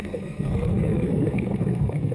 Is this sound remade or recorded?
remade